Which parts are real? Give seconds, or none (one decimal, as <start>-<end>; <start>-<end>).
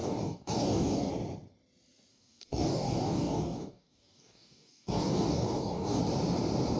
1.1-2.1; 6.0-6.8